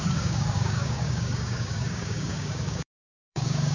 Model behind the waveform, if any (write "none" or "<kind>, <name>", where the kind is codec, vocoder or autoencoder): codec, DAC